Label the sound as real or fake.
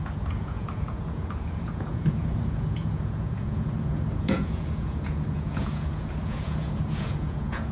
fake